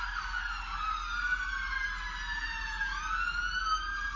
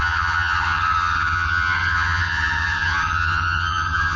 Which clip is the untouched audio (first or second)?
first